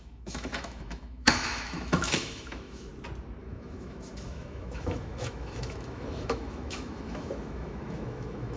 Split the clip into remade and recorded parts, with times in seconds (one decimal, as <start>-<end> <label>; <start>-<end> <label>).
0.0-2.9 remade; 2.9-3.4 recorded; 3.4-8.6 remade